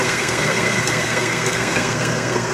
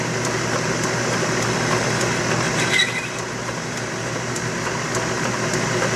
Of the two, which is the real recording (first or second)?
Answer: second